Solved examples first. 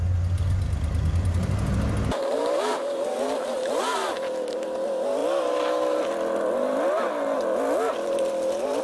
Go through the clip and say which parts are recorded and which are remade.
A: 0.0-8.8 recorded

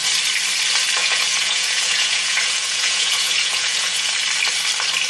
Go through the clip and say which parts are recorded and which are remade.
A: 0.0-1.0 recorded; 1.0-4.1 remade; 4.1-5.1 recorded

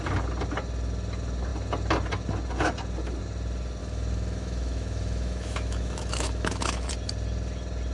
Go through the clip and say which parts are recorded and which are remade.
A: 0.0-3.8 recorded; 3.8-6.9 remade; 6.9-7.9 recorded

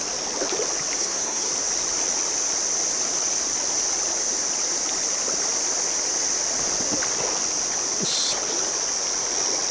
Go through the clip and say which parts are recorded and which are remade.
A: 0.0-1.0 recorded; 1.0-1.5 remade; 1.5-9.7 recorded

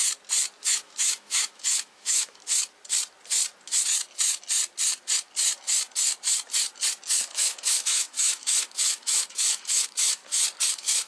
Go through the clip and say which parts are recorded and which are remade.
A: 0.0-0.6 recorded; 0.6-2.4 remade; 2.4-7.1 recorded; 7.1-10.2 remade; 10.2-10.7 recorded; 10.7-11.1 remade